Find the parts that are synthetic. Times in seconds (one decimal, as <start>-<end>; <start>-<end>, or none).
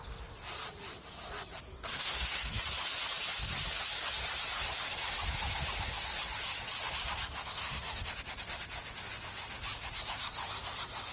1.9-2.6; 7.5-8.1